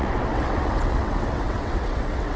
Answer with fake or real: fake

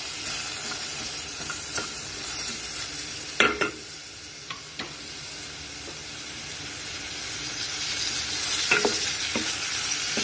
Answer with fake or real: real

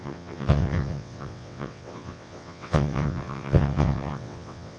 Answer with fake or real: fake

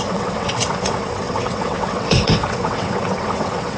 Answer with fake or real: fake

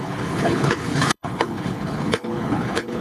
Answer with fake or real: fake